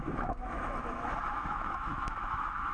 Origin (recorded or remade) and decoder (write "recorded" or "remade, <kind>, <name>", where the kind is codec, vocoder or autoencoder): remade, autoencoder, DAC-VAE